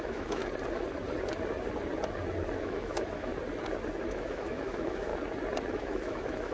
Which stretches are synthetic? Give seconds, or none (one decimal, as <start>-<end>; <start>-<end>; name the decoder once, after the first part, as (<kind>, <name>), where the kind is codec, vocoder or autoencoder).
0.0-0.4 (autoencoder, DAC-VAE); 2.6-3.3; 4.0-5.1; 5.7-6.5